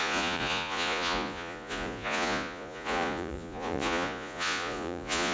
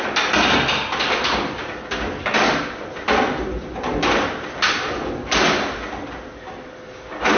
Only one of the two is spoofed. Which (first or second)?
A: first